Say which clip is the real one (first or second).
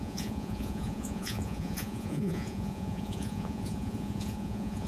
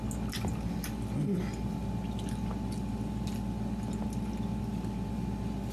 second